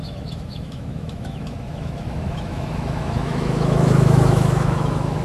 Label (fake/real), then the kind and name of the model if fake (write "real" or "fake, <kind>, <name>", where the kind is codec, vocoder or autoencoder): fake, autoencoder, DAC-VAE